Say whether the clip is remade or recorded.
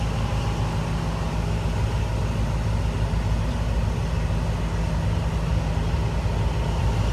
recorded